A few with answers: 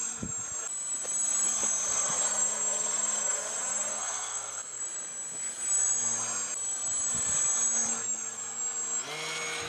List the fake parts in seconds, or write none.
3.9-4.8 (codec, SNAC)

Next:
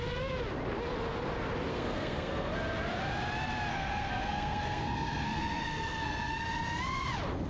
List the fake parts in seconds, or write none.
1.7-2.5 (codec, SNAC); 3.7-6.5

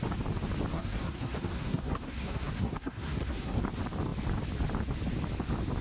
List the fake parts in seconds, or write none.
0.7-3.6 (codec, SNAC)

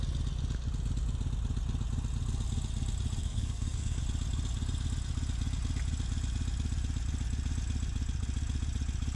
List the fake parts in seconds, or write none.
3.2-4.0 (codec, SNAC)

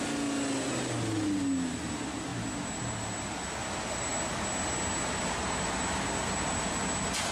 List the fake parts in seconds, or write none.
none

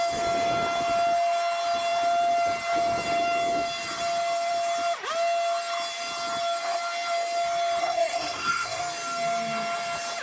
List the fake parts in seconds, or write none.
7.8-8.8 (codec, SNAC)

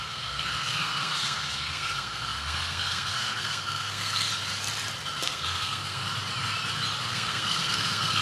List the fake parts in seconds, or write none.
0.0-4.3 (codec, SNAC); 5.2-6.0; 7.0-8.2

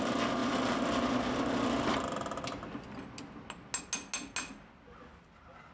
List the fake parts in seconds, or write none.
none